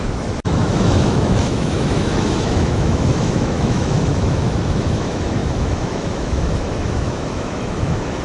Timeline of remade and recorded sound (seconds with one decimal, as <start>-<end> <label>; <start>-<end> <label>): 0.0-8.2 remade